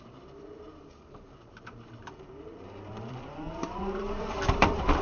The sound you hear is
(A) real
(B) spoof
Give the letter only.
B